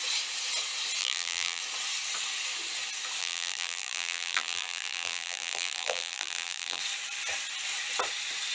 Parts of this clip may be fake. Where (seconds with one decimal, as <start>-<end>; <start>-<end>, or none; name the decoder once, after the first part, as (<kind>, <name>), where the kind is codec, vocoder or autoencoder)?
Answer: 1.0-1.6 (vocoder, BigVGAN v2); 3.2-6.8